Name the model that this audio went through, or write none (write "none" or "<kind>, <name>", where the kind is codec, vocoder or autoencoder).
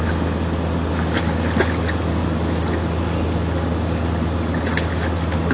none